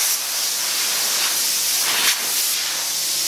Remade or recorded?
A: recorded